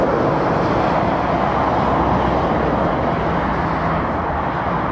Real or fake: real